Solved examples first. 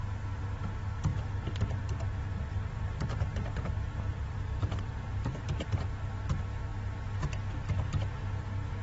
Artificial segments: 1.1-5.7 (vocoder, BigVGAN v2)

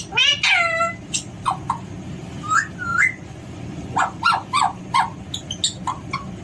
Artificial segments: 2.9-4.8 (vocoder, Vocos)

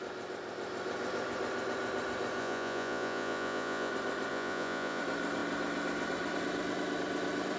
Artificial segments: 2.4-3.9 (vocoder, Vocos); 4.3-5.0

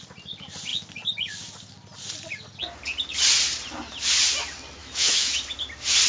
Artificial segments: 4.8-5.3 (autoencoder, DAC-VAE)

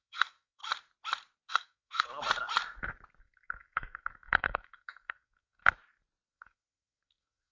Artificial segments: 0.0-0.6 (codec, SNAC); 1.5-2.1; 3.2-5.6; 6.3-7.5

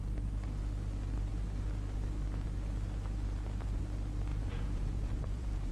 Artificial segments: 4.3-5.7 (vocoder, Vocos)

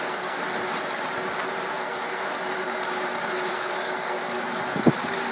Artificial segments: 0.0-0.4 (codec, SNAC); 1.7-2.3; 3.5-4.4

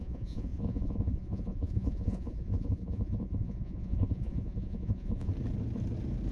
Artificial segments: 0.0-5.3 (vocoder, Vocos)